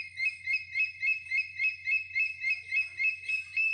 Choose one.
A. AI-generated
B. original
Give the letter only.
B